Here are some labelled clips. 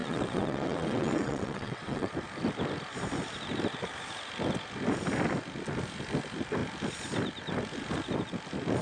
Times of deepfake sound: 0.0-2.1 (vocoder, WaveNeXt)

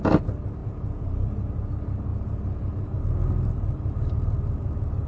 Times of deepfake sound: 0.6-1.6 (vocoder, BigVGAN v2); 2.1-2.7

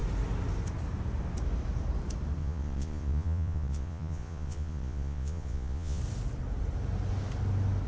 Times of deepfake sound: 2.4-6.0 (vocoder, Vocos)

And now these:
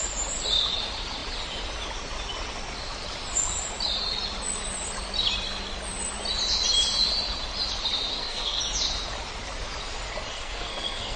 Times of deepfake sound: 8.1-8.6 (codec, SNAC); 10.3-11.2